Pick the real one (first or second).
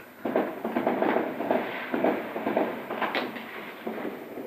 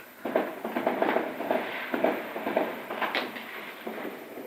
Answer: first